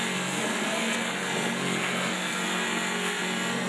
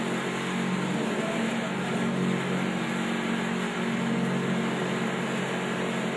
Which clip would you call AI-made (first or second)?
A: first